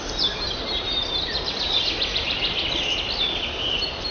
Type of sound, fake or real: fake